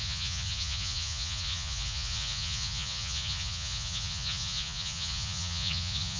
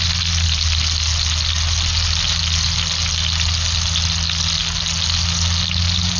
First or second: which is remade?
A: first